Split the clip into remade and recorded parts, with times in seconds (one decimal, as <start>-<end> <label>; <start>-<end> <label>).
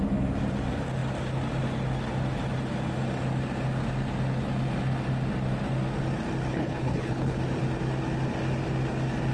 0.0-6.5 recorded; 6.5-7.4 remade; 7.4-9.3 recorded